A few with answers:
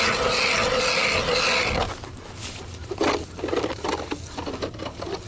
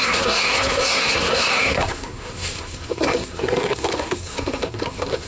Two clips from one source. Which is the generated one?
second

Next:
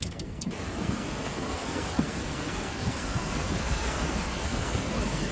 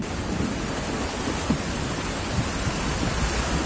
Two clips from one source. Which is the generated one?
first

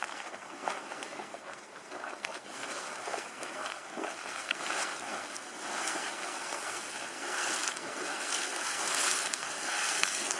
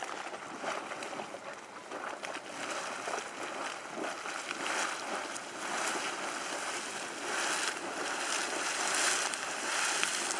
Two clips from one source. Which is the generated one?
first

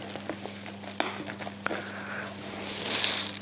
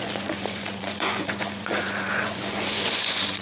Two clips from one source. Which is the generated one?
second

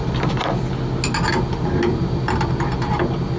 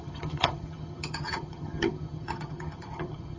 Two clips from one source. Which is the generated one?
second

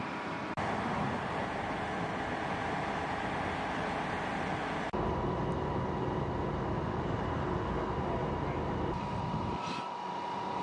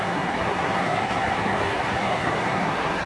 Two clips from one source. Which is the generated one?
second